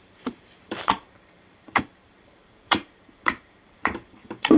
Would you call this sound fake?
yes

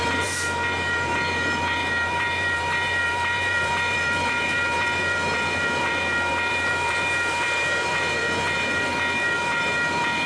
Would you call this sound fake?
yes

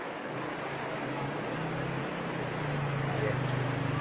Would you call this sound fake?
no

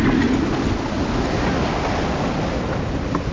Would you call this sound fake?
no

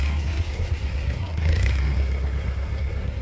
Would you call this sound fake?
yes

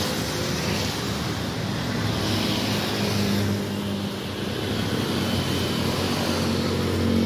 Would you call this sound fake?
no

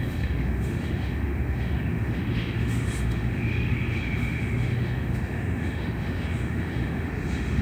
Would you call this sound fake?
yes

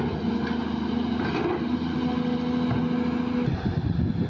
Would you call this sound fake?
no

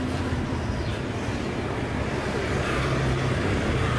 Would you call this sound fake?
no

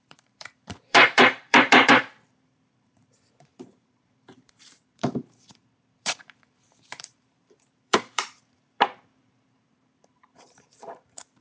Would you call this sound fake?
yes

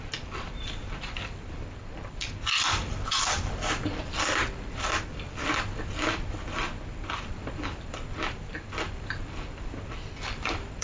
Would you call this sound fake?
yes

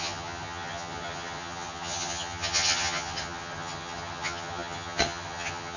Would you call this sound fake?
yes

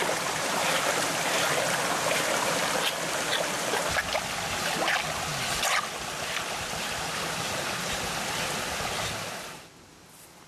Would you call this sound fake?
no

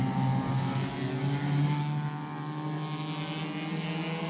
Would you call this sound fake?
no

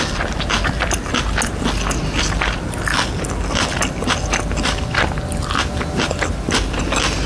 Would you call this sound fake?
no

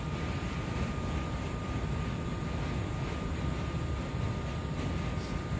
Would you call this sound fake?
no